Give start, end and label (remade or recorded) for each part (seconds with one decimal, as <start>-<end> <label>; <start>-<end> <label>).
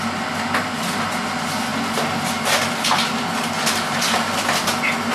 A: 0.0-5.1 recorded